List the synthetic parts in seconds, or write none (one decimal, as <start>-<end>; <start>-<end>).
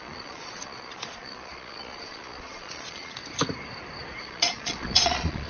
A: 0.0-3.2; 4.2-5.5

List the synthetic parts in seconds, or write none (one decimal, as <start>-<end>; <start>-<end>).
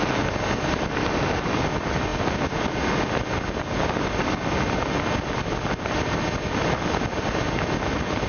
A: none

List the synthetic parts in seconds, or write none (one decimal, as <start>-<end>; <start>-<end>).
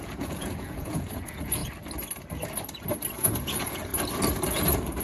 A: 0.0-1.6; 3.1-3.9; 4.5-5.0